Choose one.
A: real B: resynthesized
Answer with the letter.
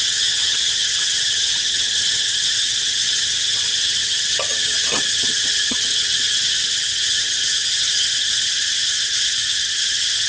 B